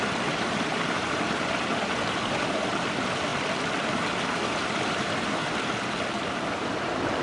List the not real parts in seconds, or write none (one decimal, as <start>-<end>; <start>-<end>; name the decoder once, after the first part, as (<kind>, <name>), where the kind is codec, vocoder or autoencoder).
3.3-4.1 (vocoder, BigVGAN v2)